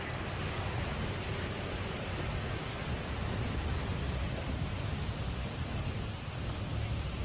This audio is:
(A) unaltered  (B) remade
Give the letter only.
A